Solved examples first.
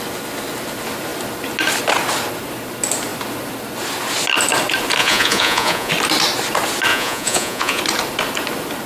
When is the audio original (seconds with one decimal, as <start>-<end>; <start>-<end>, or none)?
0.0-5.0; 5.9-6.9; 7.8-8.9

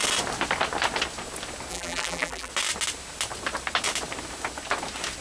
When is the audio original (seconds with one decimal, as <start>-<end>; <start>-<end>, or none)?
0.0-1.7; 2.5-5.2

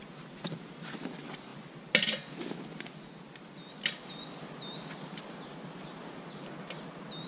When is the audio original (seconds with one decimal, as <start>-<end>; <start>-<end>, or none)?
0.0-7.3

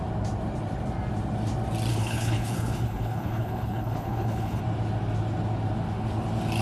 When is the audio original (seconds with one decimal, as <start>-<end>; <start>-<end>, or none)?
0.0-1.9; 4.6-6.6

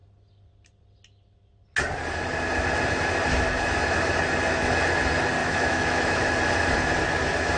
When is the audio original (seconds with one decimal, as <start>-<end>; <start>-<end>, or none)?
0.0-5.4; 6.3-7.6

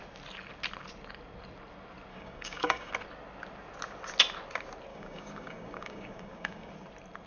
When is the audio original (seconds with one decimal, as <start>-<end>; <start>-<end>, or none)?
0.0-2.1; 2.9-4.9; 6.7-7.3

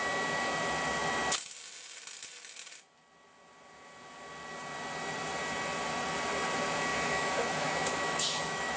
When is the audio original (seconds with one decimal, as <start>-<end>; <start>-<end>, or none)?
0.0-6.9